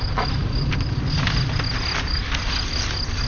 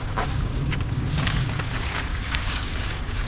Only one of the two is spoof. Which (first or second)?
second